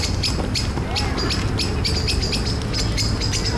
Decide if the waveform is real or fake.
real